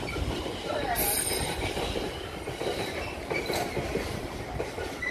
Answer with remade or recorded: recorded